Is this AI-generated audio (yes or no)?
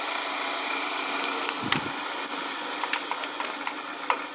no